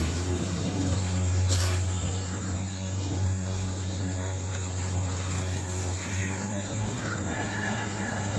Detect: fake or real fake